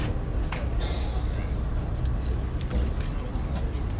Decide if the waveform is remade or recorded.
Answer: recorded